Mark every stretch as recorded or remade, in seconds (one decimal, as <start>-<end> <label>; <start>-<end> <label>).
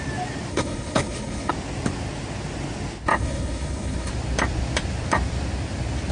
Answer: 0.0-0.5 recorded; 0.5-1.5 remade; 1.5-3.1 recorded; 3.1-4.1 remade; 4.1-6.1 recorded